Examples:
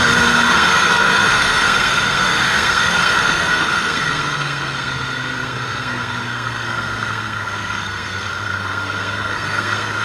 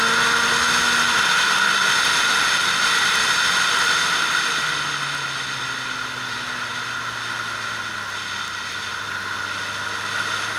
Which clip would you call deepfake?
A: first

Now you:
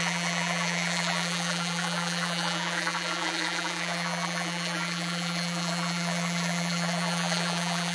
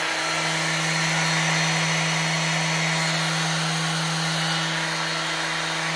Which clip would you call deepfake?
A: first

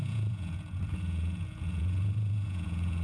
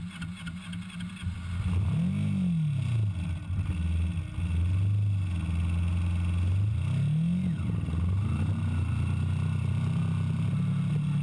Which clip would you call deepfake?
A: first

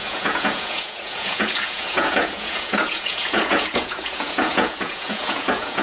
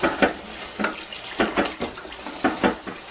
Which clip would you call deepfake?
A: first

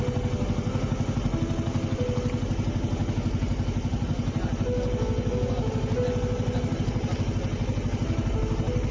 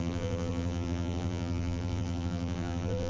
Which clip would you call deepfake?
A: second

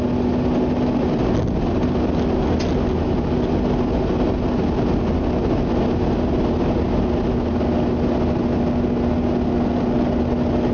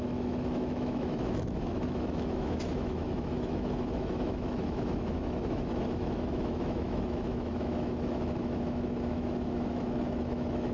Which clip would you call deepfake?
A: second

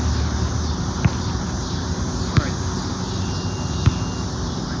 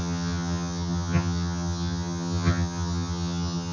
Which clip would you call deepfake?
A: second